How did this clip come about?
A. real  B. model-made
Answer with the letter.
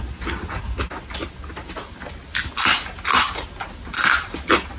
A